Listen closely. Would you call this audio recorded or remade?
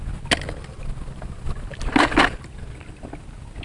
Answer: recorded